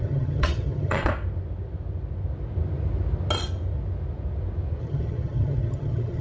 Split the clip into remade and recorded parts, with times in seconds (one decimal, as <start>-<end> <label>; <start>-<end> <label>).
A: 0.0-1.1 remade; 1.1-4.8 recorded; 4.8-6.2 remade